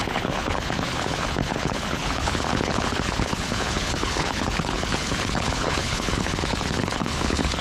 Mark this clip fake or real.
fake